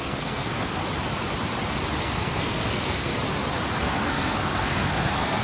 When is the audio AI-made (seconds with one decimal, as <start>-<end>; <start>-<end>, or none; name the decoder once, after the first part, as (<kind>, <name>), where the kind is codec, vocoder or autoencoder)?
0.0-0.8 (codec, SNAC); 2.0-3.1; 3.8-5.4